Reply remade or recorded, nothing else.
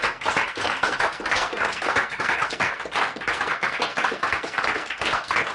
remade